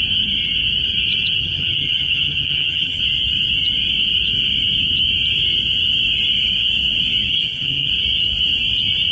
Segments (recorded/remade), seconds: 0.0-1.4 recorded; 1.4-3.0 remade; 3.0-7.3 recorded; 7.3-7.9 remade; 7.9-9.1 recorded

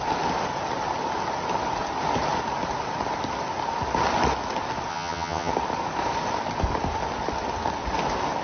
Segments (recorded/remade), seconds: 0.0-4.9 recorded; 4.9-5.5 remade; 5.5-8.4 recorded